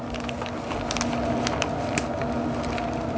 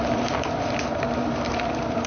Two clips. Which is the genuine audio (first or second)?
first